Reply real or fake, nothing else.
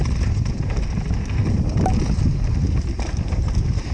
real